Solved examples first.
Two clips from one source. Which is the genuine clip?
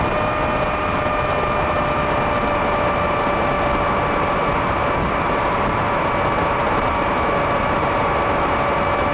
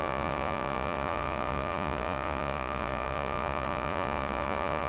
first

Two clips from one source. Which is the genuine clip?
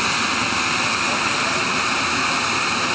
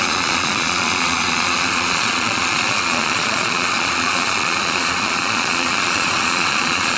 first